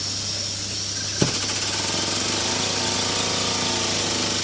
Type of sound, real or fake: real